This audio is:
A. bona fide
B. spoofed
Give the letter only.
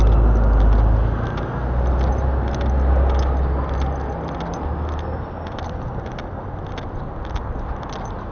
A